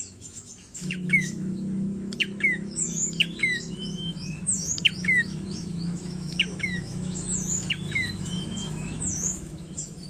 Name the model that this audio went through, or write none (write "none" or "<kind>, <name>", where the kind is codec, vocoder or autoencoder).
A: autoencoder, DAC-VAE